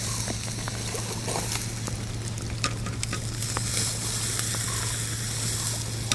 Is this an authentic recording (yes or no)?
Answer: yes